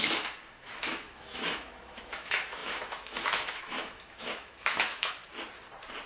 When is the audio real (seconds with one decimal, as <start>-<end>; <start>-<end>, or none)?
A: 5.2-6.1